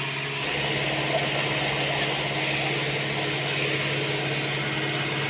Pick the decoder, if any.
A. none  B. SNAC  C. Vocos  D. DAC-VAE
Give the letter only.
A